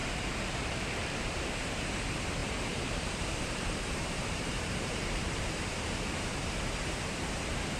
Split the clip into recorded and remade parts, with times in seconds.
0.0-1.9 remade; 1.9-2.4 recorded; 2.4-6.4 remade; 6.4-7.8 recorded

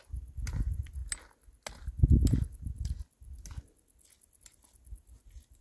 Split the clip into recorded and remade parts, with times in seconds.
0.0-5.6 recorded

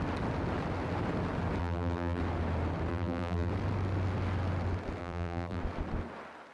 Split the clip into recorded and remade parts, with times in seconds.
0.0-1.6 recorded; 1.6-2.2 remade; 2.2-2.9 recorded; 2.9-3.5 remade; 3.5-5.0 recorded; 5.0-5.6 remade; 5.6-6.5 recorded